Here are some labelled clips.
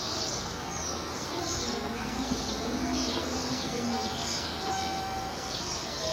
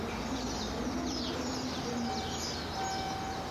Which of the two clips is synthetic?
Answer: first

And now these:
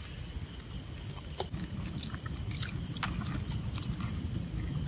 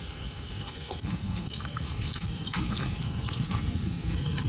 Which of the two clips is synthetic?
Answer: second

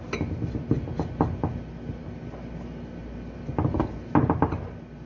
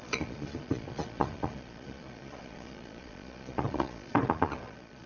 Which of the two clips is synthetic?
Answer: second